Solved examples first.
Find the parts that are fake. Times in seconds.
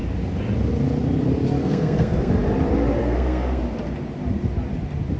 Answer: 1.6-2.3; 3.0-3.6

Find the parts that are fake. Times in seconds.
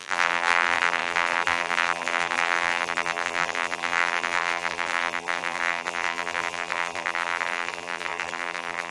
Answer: 0.0-8.9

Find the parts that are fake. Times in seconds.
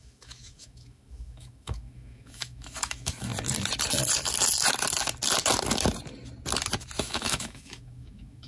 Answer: 0.0-3.3; 7.0-8.5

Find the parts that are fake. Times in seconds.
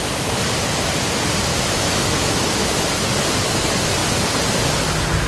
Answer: 1.5-3.1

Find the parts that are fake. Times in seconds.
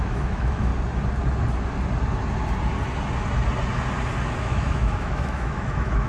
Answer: 0.0-0.7; 4.4-6.1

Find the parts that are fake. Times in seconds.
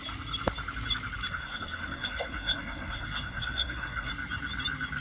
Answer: 1.3-4.1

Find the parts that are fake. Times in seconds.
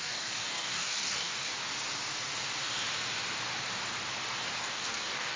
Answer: 0.0-1.5; 4.7-5.4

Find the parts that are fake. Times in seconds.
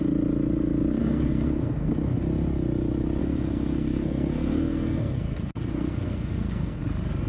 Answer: 1.0-1.9; 3.2-6.8